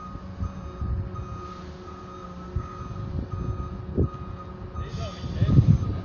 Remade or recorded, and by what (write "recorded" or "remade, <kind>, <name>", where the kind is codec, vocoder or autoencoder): recorded